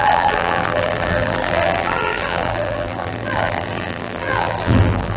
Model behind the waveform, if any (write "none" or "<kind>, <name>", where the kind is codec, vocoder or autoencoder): vocoder, BigVGAN v2